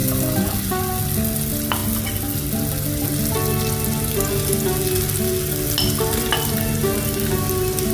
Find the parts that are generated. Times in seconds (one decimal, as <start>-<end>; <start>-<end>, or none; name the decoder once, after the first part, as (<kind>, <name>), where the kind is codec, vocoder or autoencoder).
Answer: none